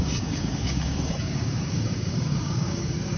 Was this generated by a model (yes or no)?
yes